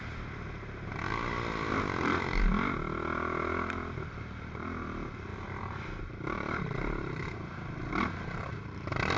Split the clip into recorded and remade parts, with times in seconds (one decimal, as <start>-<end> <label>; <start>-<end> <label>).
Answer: 0.0-4.1 recorded; 4.1-5.3 remade; 5.3-6.0 recorded; 6.0-9.2 remade